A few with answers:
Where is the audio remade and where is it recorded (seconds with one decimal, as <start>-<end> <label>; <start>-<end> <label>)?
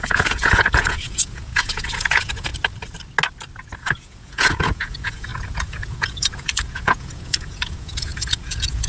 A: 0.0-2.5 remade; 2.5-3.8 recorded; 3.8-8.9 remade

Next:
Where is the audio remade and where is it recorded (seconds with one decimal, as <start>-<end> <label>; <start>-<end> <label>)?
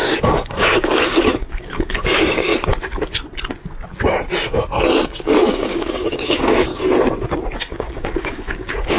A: 0.0-2.5 remade; 2.5-5.5 recorded; 5.5-6.7 remade; 6.7-7.6 recorded; 7.6-9.0 remade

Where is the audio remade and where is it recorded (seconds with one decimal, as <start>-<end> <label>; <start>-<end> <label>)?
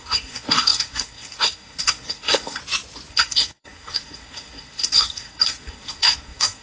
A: 0.0-2.6 remade; 2.6-3.1 recorded; 3.1-6.6 remade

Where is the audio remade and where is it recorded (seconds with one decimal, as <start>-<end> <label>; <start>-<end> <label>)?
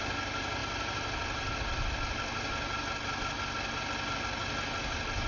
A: 0.0-5.3 recorded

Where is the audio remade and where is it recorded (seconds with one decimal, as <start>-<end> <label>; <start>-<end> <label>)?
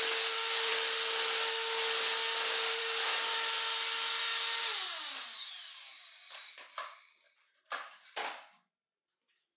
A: 0.0-9.6 recorded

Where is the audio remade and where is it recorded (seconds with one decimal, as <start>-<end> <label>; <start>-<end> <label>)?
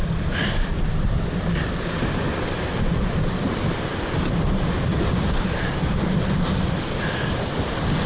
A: 0.0-8.1 remade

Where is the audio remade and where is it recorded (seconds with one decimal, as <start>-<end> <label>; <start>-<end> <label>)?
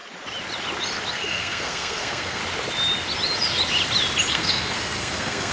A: 0.0-1.1 recorded; 1.1-2.4 remade; 2.4-4.3 recorded; 4.3-5.5 remade